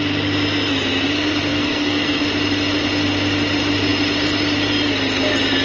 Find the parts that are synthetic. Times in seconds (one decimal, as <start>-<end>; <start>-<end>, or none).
1.5-2.2

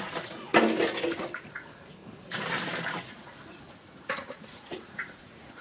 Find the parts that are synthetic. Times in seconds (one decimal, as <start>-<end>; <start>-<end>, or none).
0.0-0.5; 1.5-2.0; 3.1-5.6

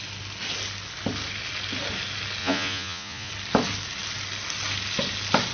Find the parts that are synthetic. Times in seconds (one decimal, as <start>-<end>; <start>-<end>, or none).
2.4-3.3

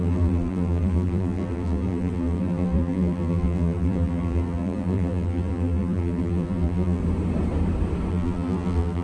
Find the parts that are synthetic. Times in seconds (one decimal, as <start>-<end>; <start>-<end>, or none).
0.0-7.0; 8.1-9.0

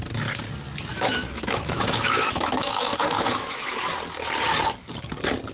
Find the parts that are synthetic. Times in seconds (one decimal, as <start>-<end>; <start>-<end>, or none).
0.9-3.9

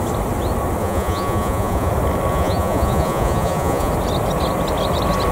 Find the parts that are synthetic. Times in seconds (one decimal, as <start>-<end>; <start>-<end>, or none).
0.8-1.9; 2.3-3.9